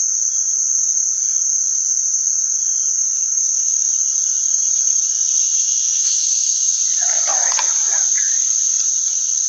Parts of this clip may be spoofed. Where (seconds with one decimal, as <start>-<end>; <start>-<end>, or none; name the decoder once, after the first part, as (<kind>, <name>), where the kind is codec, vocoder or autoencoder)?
3.0-3.9 (autoencoder, DAC-VAE); 5.4-6.7